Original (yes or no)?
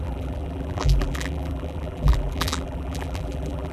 no